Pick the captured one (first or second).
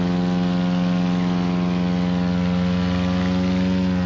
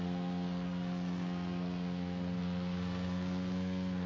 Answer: first